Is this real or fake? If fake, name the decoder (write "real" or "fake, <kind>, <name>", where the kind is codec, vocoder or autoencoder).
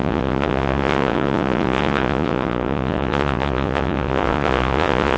fake, vocoder, Vocos